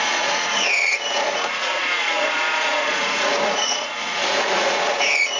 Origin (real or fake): fake